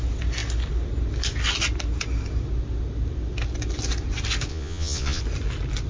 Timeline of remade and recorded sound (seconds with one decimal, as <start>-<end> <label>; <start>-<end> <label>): 0.0-4.5 recorded; 4.5-5.2 remade; 5.2-5.9 recorded